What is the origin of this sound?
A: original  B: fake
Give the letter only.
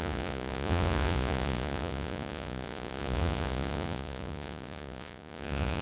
B